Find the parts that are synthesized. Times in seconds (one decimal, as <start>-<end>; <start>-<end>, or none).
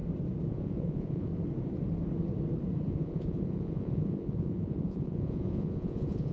0.5-1.3; 2.8-6.3